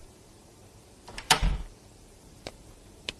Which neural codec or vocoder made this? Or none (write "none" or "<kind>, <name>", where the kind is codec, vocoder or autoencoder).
vocoder, BigVGAN v2